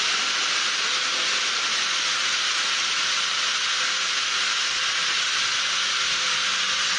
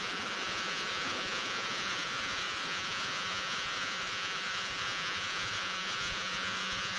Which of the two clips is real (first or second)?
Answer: first